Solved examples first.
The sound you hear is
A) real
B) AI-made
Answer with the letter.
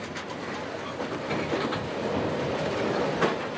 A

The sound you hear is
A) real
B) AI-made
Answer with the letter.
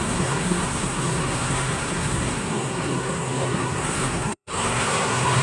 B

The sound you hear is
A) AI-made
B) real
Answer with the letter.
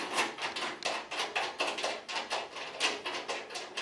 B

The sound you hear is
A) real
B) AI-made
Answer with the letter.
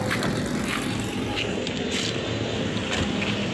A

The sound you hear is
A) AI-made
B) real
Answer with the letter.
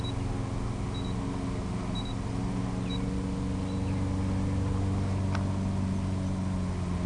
B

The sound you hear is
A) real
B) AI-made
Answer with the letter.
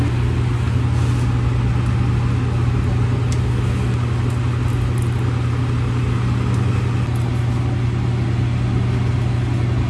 A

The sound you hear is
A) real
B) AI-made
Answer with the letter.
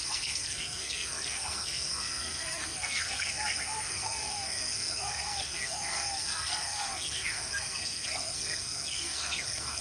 B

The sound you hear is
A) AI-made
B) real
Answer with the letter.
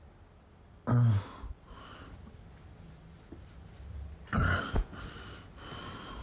B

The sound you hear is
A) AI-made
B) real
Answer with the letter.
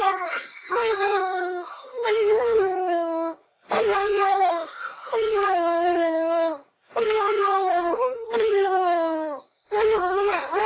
A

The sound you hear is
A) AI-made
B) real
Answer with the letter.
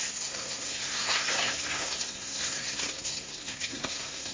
A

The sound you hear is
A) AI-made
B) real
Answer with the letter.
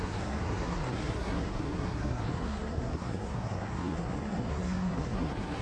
A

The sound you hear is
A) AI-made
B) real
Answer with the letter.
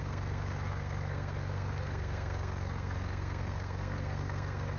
A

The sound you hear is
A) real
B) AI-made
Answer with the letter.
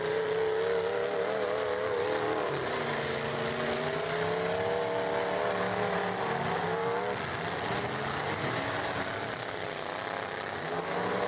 A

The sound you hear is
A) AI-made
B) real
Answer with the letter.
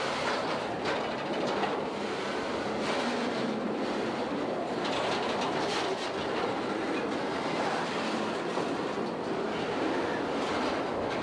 B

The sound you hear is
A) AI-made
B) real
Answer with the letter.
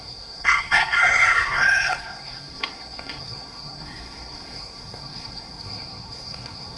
A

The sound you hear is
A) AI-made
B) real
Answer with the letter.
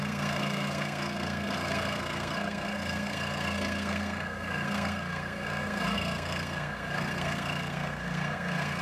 A